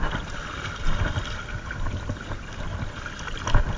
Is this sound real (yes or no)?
yes